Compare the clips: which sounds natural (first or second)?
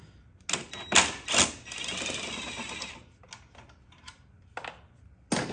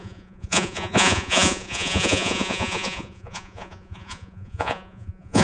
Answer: first